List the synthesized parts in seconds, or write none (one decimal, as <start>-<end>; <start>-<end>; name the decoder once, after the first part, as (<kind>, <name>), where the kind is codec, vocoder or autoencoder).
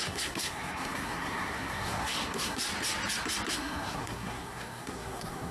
0.0-2.7 (codec, SNAC); 3.5-5.5